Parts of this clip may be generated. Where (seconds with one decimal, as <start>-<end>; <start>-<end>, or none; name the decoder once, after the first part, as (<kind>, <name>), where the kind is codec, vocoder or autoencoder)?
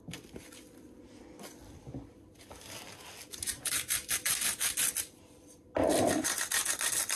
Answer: none